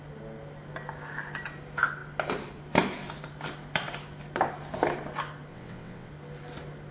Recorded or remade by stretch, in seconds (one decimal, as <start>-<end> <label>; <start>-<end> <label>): 0.0-5.5 recorded; 5.5-6.1 remade; 6.1-6.9 recorded